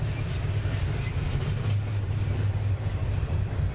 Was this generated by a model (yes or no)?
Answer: no